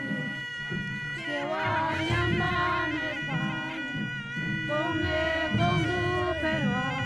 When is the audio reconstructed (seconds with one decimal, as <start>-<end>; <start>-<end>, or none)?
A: none